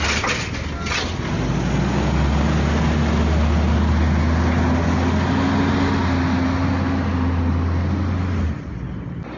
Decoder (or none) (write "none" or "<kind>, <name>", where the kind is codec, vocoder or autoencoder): none